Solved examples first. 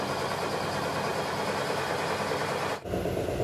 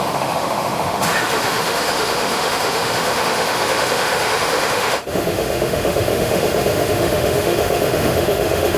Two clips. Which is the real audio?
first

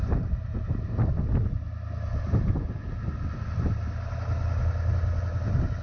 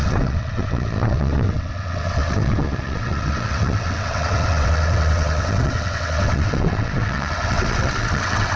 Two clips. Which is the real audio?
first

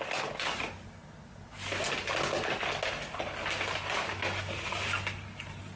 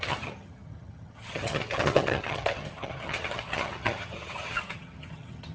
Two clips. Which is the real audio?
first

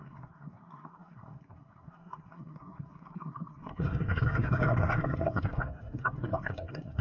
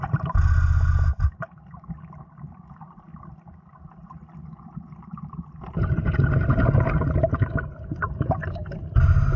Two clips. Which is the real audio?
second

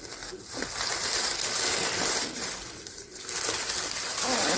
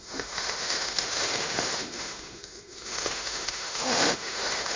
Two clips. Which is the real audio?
first